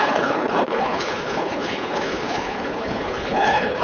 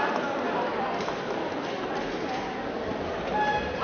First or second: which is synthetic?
first